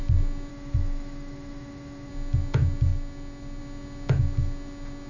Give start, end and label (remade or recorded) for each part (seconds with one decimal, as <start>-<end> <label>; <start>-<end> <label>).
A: 0.0-0.5 recorded; 0.5-2.1 remade; 2.1-5.1 recorded